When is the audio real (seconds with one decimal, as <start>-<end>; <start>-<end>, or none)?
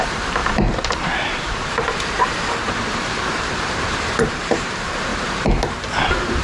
none